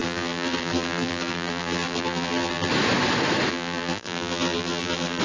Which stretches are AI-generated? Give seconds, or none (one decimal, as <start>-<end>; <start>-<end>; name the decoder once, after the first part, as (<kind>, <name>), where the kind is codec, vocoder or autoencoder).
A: 0.0-2.7 (vocoder, BigVGAN v2); 3.5-5.2